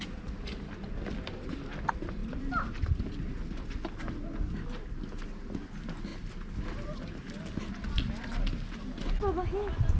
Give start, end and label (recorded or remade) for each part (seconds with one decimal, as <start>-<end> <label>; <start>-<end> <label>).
0.0-10.0 recorded